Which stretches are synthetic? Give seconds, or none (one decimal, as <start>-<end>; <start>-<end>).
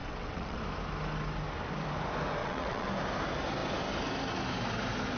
0.0-0.6; 2.4-2.9